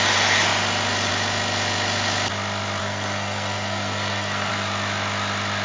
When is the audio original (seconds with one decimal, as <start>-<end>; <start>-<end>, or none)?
0.0-2.8; 4.5-5.6